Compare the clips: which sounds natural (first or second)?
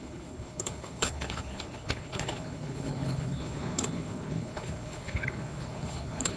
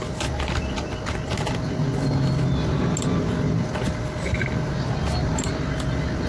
second